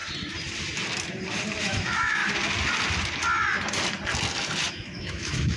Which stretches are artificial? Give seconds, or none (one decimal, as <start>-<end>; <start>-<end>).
1.6-2.2; 4.7-5.6